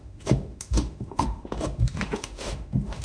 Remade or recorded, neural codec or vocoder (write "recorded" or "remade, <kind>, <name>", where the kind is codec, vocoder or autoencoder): remade, autoencoder, DAC-VAE